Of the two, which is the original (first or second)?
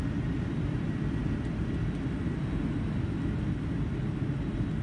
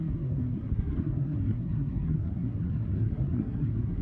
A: first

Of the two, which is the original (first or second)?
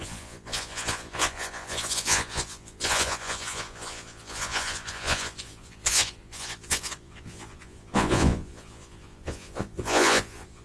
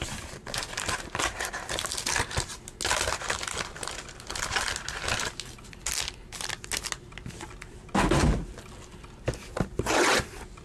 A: second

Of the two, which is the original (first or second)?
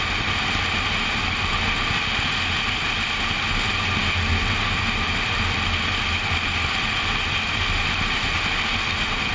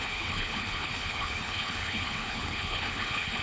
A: first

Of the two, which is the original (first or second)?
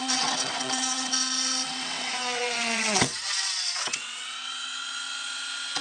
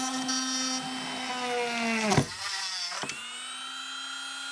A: second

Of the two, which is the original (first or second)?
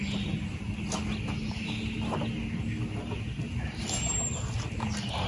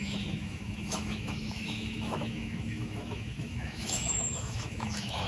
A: first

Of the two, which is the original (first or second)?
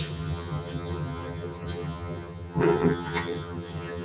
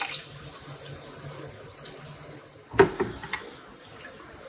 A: second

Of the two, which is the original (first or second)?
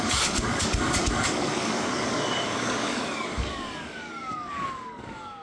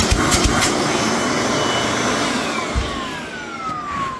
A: second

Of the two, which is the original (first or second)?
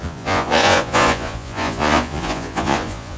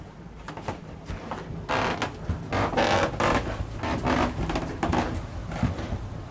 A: second